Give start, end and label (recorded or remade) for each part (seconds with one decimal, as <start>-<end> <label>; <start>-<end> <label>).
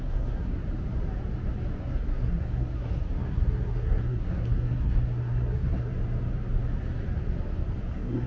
0.0-0.6 remade; 0.6-1.8 recorded; 1.8-5.9 remade; 5.9-7.9 recorded; 7.9-8.3 remade